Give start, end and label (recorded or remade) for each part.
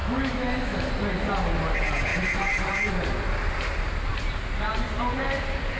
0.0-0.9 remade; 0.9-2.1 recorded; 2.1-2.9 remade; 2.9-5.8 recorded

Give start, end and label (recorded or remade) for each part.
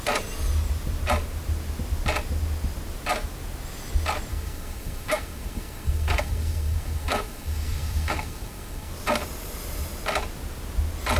0.0-4.3 recorded; 4.3-8.9 remade; 8.9-11.2 recorded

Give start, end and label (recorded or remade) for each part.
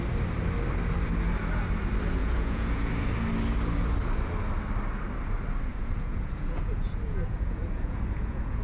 0.0-2.2 recorded; 2.2-2.9 remade; 2.9-5.7 recorded; 5.7-8.6 remade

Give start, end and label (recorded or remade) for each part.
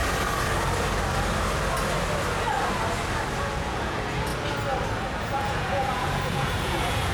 0.0-3.4 recorded; 3.4-4.3 remade; 4.3-5.2 recorded; 5.2-7.1 remade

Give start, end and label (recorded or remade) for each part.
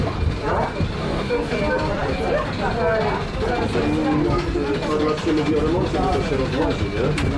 0.0-1.0 recorded; 1.0-1.6 remade; 1.6-7.4 recorded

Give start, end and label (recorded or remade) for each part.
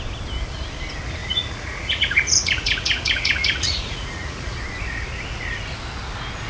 0.0-1.2 recorded; 1.2-4.6 remade; 4.6-6.5 recorded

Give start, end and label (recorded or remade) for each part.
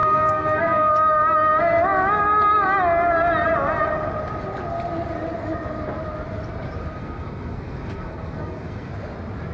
0.0-0.9 remade; 0.9-7.0 recorded; 7.0-8.9 remade; 8.9-9.5 recorded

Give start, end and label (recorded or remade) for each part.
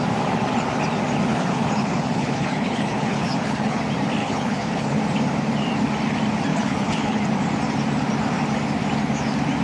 0.0-1.3 recorded; 1.3-3.8 remade; 3.8-4.2 recorded; 4.2-5.0 remade; 5.0-6.5 recorded; 6.5-7.2 remade; 7.2-9.6 recorded